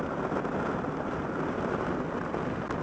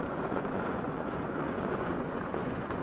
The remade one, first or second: second